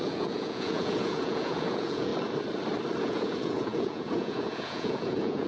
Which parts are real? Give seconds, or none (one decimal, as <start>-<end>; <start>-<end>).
2.1-3.0

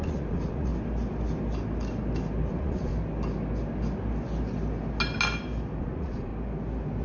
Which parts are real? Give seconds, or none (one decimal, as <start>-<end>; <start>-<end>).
0.7-2.5; 2.9-5.8; 6.3-7.0

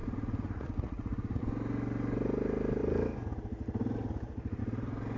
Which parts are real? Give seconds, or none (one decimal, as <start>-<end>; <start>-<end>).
1.4-5.2

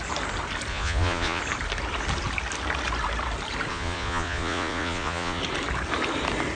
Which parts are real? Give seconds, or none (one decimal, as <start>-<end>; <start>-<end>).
0.0-0.7; 1.4-3.7; 5.4-6.6

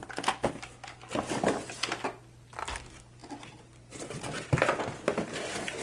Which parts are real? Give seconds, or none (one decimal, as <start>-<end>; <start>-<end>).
0.0-5.8